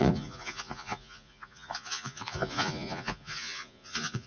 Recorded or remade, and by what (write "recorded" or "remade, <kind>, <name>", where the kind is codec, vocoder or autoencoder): remade, vocoder, Vocos